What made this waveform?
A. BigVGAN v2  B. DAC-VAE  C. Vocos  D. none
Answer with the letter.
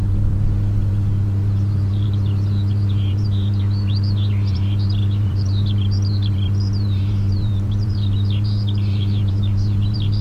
A